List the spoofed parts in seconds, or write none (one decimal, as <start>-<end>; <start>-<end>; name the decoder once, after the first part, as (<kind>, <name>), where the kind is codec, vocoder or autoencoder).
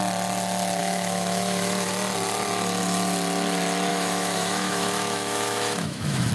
0.8-1.9 (autoencoder, DAC-VAE); 3.9-6.3